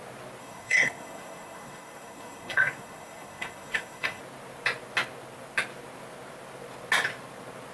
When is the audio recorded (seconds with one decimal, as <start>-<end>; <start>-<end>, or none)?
0.0-0.4; 4.2-7.7